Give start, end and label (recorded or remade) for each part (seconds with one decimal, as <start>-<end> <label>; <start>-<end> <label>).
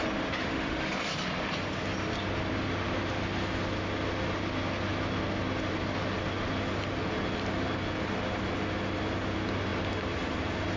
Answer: 0.0-0.4 recorded; 0.4-0.9 remade; 0.9-10.8 recorded